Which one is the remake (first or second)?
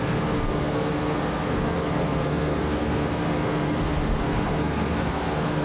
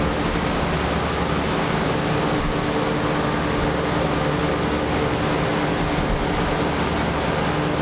first